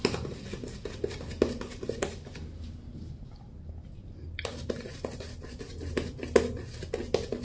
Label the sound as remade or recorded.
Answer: recorded